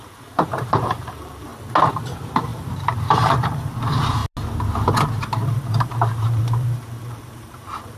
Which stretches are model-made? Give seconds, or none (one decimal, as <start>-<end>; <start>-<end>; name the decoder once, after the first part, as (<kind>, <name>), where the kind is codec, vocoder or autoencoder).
0.0-1.5 (vocoder, BigVGAN v2); 2.1-4.2; 5.2-8.0